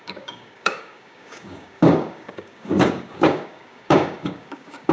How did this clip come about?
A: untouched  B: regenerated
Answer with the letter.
B